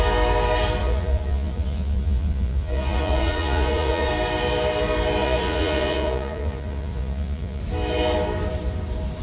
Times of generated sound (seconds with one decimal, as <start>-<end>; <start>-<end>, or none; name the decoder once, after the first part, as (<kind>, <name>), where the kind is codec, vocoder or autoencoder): 0.8-4.1 (vocoder, Vocos); 5.2-7.6